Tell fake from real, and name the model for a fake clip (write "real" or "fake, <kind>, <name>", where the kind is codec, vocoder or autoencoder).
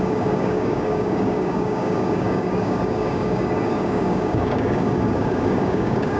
fake, codec, DAC